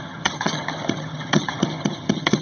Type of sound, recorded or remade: remade